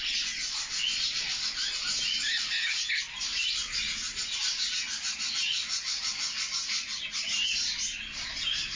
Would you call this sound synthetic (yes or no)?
no